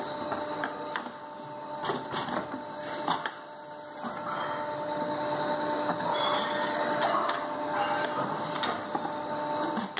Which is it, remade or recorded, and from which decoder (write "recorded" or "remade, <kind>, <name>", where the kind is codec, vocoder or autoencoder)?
recorded